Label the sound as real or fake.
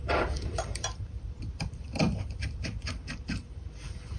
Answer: fake